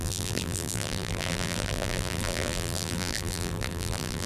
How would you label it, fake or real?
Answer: fake